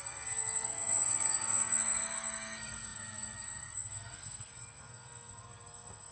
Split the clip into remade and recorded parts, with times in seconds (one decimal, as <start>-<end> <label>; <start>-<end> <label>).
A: 0.0-6.1 remade